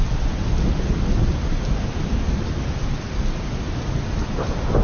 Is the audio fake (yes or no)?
no